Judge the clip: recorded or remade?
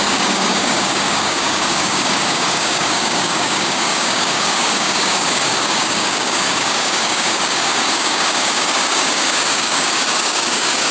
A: remade